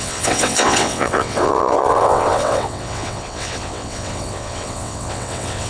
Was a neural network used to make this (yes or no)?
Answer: yes